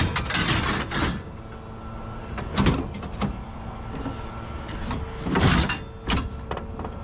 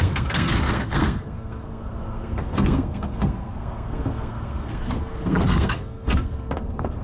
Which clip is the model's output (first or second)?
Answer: second